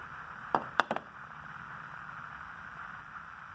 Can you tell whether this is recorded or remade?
remade